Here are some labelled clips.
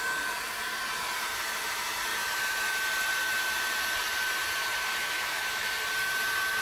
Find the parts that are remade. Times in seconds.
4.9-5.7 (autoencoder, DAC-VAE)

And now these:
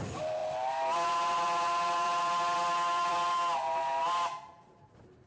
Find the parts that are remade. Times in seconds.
none

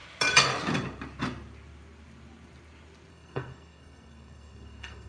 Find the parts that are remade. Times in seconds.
3.1-5.1 (codec, SNAC)

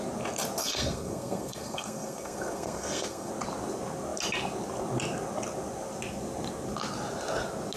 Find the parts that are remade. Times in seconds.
0.6-3.3 (codec, SNAC)

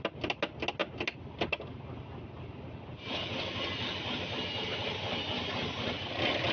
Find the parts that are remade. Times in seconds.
none